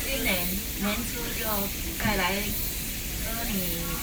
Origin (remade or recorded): recorded